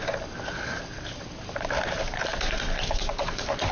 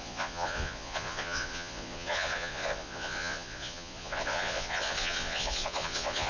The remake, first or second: second